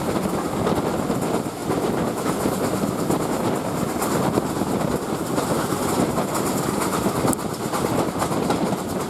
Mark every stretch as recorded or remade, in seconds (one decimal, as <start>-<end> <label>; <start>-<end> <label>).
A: 0.0-9.1 recorded